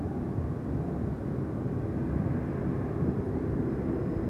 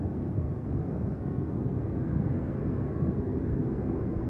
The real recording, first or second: first